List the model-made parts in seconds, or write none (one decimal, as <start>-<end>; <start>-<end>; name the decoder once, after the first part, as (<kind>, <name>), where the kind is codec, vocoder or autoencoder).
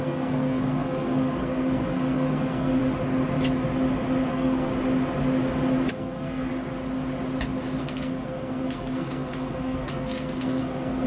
0.0-2.8 (codec, SNAC); 4.3-4.7; 5.9-6.5; 7.8-11.1